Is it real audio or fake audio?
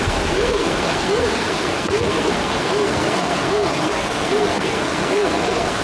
fake